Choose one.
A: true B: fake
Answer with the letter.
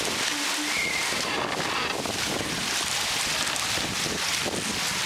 A